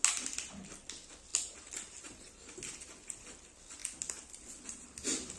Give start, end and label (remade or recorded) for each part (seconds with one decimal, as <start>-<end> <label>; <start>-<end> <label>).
0.0-1.3 recorded; 1.3-2.5 remade; 2.5-5.4 recorded